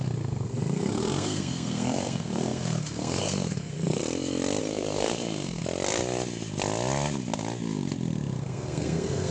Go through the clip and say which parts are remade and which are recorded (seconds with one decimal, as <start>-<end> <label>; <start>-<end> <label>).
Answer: 0.0-4.0 remade; 4.0-4.6 recorded; 4.6-5.6 remade; 5.6-8.4 recorded; 8.4-9.3 remade